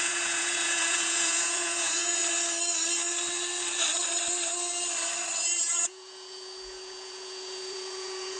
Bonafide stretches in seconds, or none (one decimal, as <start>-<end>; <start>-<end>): 2.2-5.6